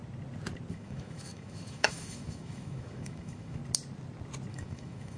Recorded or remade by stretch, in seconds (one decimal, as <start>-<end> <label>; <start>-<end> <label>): 0.0-0.7 recorded; 0.7-3.6 remade; 3.6-4.5 recorded; 4.5-5.2 remade